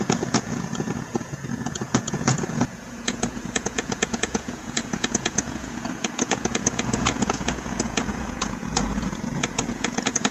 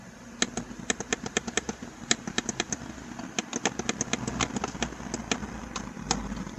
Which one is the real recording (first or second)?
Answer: second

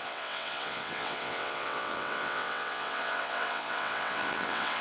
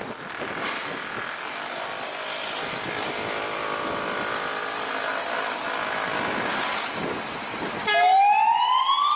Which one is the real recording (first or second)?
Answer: second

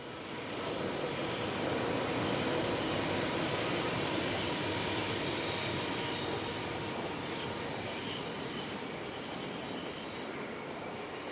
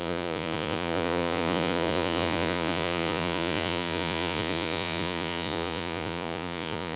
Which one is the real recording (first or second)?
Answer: first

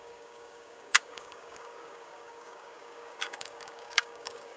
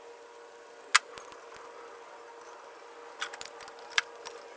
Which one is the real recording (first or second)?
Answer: second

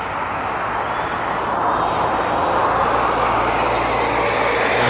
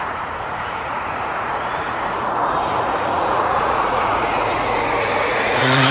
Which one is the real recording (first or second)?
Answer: first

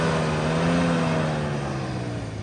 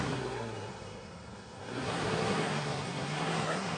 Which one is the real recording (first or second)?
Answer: first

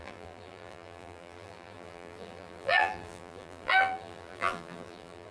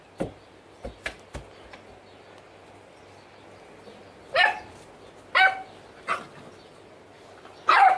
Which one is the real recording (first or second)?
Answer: second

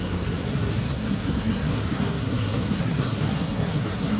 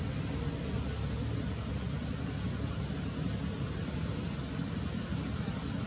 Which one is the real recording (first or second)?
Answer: second